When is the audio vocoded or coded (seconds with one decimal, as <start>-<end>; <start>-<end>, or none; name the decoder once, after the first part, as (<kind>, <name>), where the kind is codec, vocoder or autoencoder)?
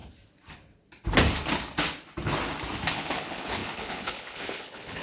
2.9-5.0 (codec, HILCodec)